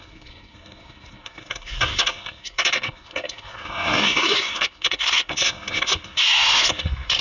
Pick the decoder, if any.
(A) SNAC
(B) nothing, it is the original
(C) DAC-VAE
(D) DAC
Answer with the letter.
A